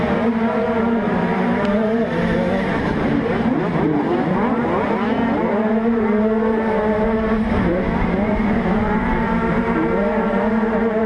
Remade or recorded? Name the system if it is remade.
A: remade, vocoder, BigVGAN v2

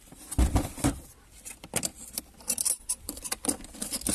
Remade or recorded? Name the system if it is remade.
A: remade, vocoder, BigVGAN v2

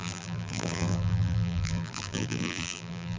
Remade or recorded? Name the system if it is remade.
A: remade, vocoder, BigVGAN v2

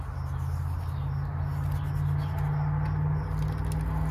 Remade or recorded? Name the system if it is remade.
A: recorded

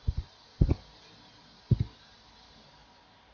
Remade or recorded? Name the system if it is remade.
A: recorded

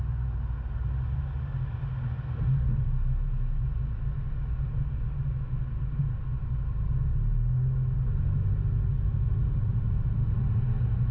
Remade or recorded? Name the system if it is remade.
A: recorded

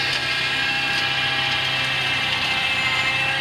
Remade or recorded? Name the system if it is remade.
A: recorded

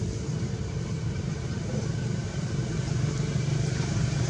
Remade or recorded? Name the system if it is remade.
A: remade, vocoder, BigVGAN v2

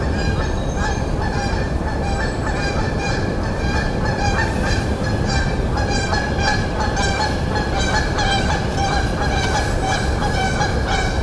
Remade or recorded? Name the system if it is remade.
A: remade, vocoder, BigVGAN v2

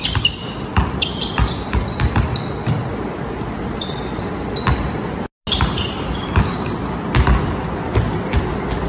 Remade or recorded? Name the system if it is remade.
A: recorded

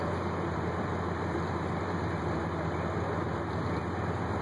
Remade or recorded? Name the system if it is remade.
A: remade, vocoder, BigVGAN v2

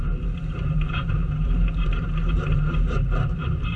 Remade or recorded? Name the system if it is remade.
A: remade, vocoder, BigVGAN v2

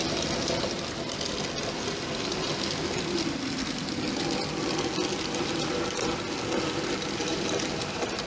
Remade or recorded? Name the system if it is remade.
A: recorded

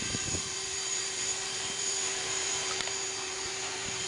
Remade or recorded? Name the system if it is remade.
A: remade, vocoder, BigVGAN v2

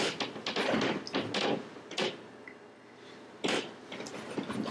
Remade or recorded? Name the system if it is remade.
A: recorded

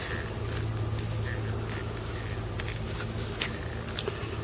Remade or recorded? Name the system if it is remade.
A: recorded